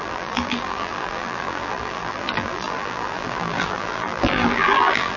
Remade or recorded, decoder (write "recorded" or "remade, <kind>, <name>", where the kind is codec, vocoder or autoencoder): remade, vocoder, BigVGAN v2